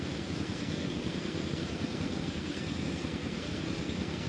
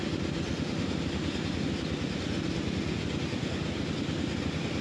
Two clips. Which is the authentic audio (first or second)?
second